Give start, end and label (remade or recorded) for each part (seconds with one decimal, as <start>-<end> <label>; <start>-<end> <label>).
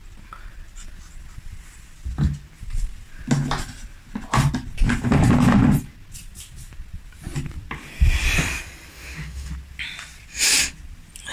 0.0-8.9 recorded; 8.9-9.5 remade; 9.5-11.3 recorded